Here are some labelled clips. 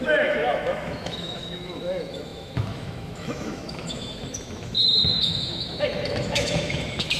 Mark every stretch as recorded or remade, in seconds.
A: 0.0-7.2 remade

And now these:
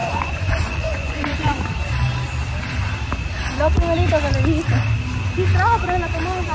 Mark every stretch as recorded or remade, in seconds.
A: 0.0-1.6 remade; 1.6-6.5 recorded

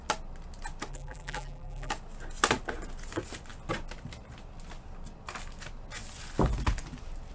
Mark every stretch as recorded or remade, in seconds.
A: 0.0-0.9 recorded; 0.9-1.9 remade; 1.9-7.3 recorded

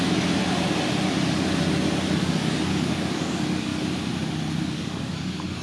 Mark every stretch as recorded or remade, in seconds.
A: 0.0-2.2 recorded; 2.2-3.7 remade; 3.7-4.6 recorded; 4.6-5.6 remade

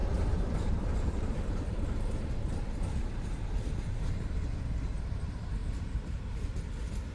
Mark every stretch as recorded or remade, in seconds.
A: 0.0-4.3 remade; 4.3-5.6 recorded; 5.6-6.6 remade; 6.6-7.1 recorded

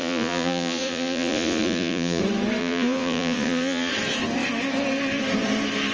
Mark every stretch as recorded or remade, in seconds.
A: 0.0-2.2 remade; 2.2-2.6 recorded; 2.6-3.9 remade; 3.9-5.9 recorded

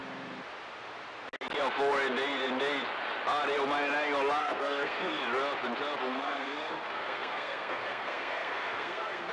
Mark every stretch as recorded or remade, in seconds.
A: 0.0-4.4 recorded; 4.4-5.2 remade; 5.2-6.0 recorded; 6.0-9.3 remade